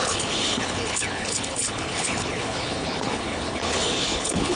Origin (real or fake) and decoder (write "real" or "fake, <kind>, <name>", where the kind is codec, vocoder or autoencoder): fake, codec, HILCodec